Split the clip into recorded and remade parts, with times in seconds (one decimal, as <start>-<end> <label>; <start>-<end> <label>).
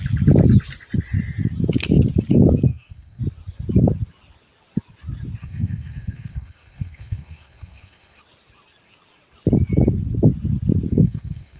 0.0-2.7 recorded; 2.7-3.2 remade; 3.2-5.4 recorded; 5.4-8.2 remade; 8.2-10.9 recorded; 10.9-11.6 remade